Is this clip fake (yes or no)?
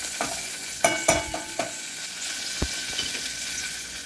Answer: yes